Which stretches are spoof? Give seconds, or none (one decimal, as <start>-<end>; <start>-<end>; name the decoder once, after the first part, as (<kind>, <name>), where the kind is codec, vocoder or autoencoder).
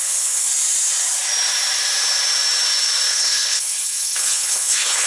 0.0-0.5 (codec, HILCodec); 3.1-5.1